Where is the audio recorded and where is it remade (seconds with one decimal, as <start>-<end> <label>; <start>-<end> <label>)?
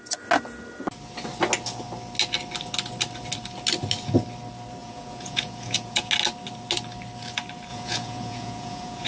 0.0-4.8 recorded; 4.8-6.1 remade; 6.1-7.7 recorded; 7.7-9.1 remade